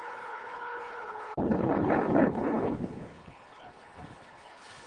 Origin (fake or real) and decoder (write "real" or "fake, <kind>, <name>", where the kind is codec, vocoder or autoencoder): fake, codec, HILCodec